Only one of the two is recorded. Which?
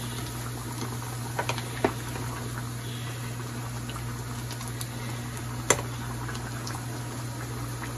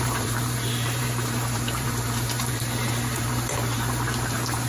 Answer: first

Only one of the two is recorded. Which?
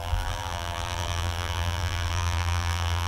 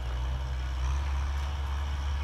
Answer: second